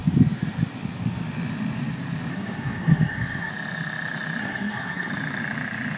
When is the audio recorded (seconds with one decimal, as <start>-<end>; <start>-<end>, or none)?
0.0-2.3; 3.5-4.4; 5.1-6.0